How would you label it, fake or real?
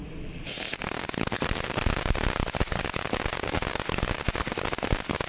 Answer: real